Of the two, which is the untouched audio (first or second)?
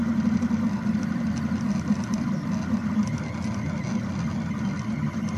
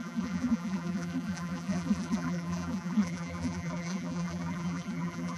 first